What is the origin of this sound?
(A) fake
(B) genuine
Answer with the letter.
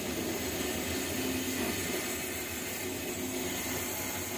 B